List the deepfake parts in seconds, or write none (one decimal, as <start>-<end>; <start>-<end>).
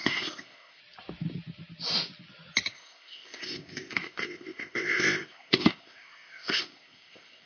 0.0-0.8; 2.7-7.5